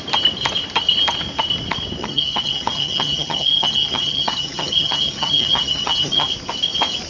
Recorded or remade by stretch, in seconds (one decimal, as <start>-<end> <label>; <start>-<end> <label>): 0.0-2.0 recorded; 2.0-6.3 remade; 6.3-7.1 recorded